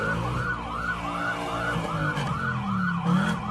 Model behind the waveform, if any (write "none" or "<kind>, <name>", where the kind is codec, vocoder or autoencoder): none